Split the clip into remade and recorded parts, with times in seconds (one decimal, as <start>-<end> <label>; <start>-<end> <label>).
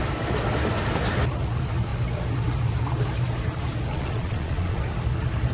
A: 0.0-3.9 recorded; 3.9-4.8 remade; 4.8-5.5 recorded